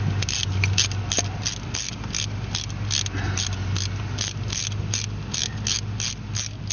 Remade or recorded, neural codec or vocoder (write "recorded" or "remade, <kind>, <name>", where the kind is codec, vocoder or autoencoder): recorded